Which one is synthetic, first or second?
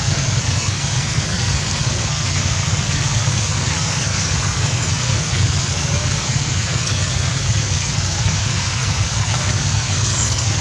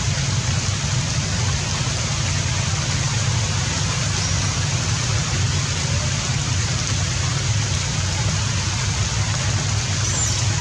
first